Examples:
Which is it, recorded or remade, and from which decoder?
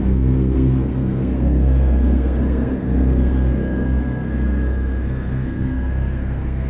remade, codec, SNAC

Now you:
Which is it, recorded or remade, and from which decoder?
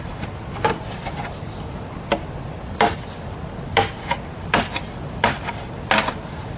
recorded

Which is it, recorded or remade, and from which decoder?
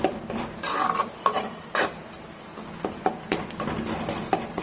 recorded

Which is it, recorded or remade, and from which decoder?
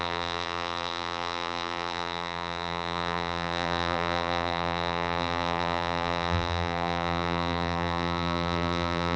remade, vocoder, BigVGAN v2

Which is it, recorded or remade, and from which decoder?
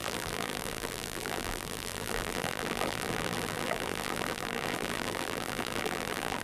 remade, vocoder, BigVGAN v2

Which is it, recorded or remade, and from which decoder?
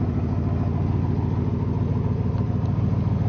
recorded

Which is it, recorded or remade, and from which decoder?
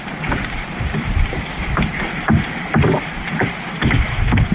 recorded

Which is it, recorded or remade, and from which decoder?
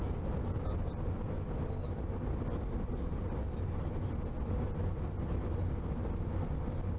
recorded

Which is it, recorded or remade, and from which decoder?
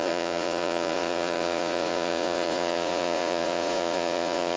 remade, vocoder, Vocos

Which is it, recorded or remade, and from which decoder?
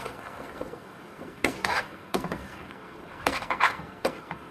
remade, codec, SNAC